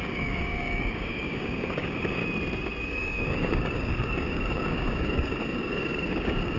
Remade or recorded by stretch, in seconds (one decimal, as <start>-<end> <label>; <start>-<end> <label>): 0.0-2.2 remade; 2.2-2.8 recorded; 2.8-6.6 remade

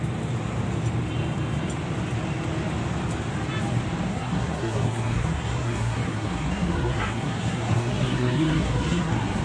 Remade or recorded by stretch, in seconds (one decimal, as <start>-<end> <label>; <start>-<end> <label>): 0.0-4.1 recorded; 4.1-9.4 remade

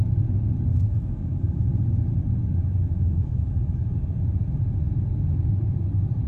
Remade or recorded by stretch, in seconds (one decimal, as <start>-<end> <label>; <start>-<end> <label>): 0.0-0.7 recorded; 0.7-1.7 remade; 1.7-2.8 recorded; 2.8-3.8 remade; 3.8-6.3 recorded

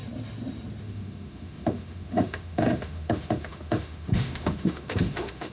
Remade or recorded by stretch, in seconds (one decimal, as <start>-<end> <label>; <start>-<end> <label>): 0.0-0.8 recorded; 0.8-5.5 remade

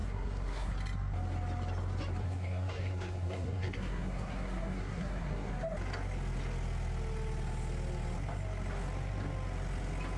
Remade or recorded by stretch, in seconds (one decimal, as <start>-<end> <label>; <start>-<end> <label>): 0.0-0.7 remade; 0.7-2.2 recorded; 2.2-5.5 remade; 5.5-10.2 recorded

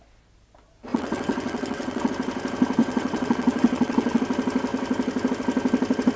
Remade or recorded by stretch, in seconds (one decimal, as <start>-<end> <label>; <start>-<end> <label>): 0.0-0.9 recorded; 0.9-2.1 remade; 2.1-2.8 recorded; 2.8-4.2 remade; 4.2-6.2 recorded